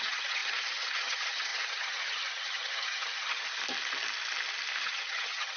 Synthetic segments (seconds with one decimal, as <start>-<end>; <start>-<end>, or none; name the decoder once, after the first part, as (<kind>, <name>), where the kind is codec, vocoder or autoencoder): 0.0-3.6 (vocoder, HiFi-GAN); 4.8-5.6